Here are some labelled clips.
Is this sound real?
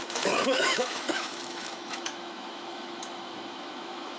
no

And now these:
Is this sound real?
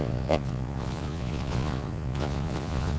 no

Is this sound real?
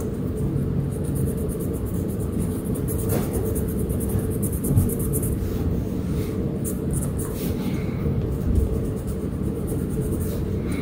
no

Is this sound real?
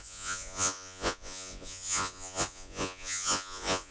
no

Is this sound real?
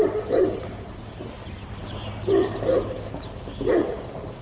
yes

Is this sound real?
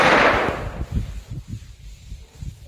yes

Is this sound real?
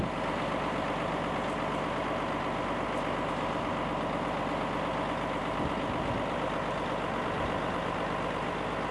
yes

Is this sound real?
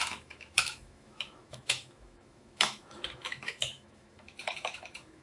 no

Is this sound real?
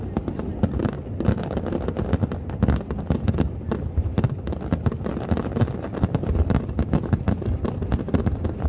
yes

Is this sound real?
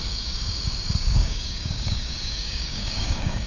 no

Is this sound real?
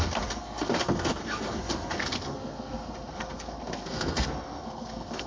no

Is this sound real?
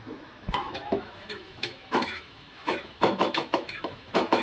no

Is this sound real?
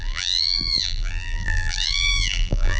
no